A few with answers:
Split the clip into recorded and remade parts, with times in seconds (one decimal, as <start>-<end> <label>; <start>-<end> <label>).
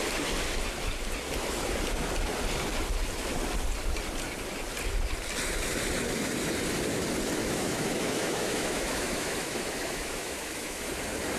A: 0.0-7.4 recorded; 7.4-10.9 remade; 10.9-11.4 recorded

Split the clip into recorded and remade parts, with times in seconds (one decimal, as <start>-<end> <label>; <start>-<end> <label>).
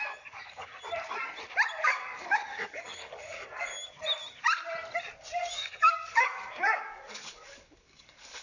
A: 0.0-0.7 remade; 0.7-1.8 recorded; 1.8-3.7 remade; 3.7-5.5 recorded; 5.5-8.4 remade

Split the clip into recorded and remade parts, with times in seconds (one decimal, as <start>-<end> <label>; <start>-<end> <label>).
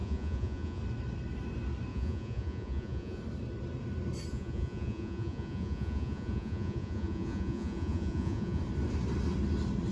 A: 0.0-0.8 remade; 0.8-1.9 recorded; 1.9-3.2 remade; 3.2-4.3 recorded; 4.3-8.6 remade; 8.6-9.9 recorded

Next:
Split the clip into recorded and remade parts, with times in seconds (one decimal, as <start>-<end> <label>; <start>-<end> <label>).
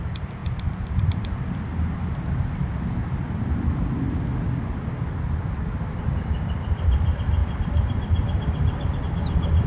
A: 0.0-9.7 recorded